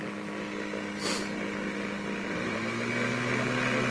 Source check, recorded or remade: recorded